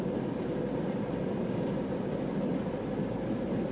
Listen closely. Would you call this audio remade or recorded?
recorded